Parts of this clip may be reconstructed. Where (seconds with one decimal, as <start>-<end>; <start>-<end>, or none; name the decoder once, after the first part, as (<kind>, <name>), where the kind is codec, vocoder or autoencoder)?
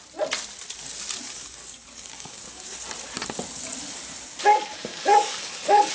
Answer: 1.4-2.7 (codec, DAC); 4.9-5.9